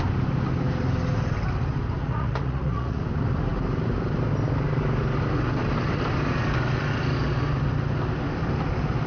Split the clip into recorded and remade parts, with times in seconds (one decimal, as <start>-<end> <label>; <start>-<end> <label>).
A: 0.0-2.0 recorded; 2.0-3.0 remade; 3.0-9.1 recorded